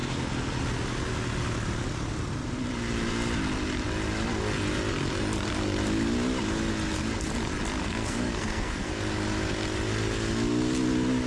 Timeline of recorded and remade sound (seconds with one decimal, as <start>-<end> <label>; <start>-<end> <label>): 0.0-7.8 recorded; 7.8-8.9 remade; 8.9-11.3 recorded